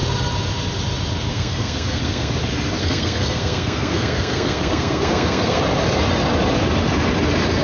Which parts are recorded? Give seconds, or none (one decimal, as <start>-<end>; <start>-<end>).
0.0-1.3; 2.3-2.8; 5.6-7.6